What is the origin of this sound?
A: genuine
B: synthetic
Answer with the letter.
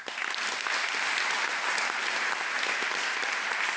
A